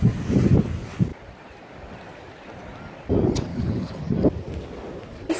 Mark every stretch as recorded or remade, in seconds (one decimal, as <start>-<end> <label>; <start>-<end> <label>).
0.0-3.5 recorded; 3.5-4.0 remade; 4.0-5.4 recorded